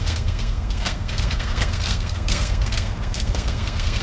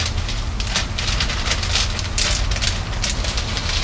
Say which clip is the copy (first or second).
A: first